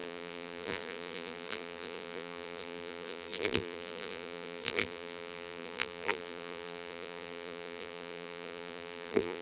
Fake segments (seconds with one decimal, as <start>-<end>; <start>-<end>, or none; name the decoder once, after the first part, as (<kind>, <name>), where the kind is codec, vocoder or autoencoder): 0.0-9.4 (vocoder, BigVGAN v2)